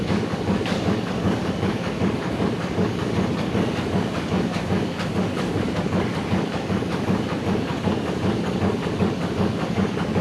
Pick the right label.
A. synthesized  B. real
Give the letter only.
A